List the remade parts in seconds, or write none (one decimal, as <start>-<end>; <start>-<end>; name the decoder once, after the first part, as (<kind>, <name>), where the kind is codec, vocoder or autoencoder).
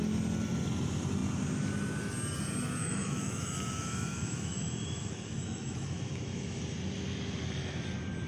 2.8-6.6 (autoencoder, DAC-VAE)